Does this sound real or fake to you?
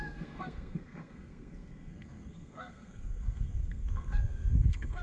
fake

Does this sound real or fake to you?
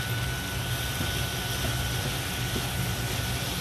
real